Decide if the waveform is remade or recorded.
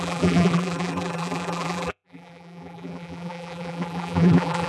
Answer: remade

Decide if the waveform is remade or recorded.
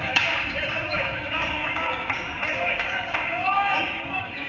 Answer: remade